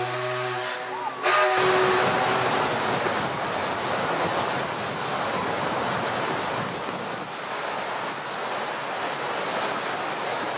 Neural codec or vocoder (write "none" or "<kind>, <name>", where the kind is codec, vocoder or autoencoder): none